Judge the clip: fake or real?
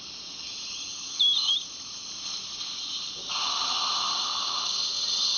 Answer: real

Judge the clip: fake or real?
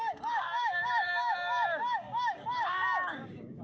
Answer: fake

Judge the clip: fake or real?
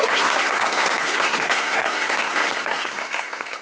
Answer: fake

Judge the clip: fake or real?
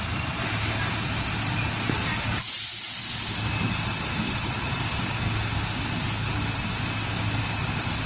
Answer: real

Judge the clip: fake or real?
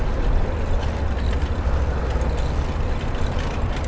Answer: real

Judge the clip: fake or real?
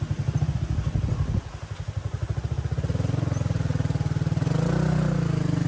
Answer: real